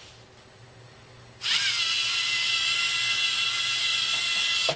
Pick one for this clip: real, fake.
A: real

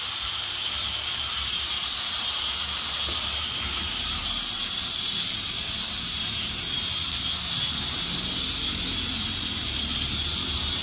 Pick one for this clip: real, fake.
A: fake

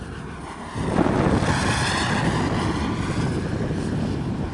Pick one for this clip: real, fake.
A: real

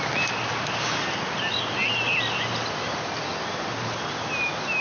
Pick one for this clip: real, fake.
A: real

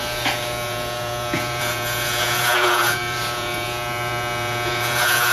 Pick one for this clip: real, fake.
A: fake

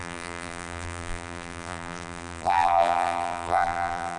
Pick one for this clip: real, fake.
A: fake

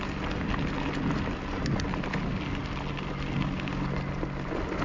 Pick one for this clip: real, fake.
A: real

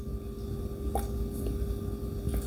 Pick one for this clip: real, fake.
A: real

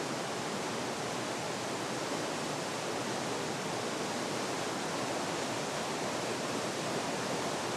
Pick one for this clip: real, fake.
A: real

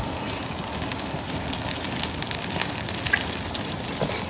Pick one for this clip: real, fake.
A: real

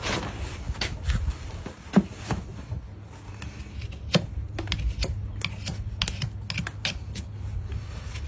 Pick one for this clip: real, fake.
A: real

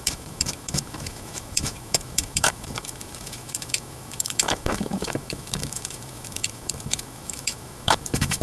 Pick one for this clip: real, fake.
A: fake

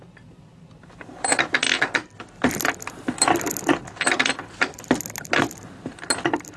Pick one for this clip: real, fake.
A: real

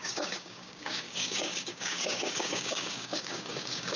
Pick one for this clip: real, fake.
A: fake